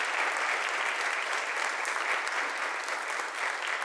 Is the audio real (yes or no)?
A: yes